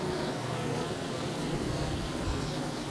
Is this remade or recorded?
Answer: remade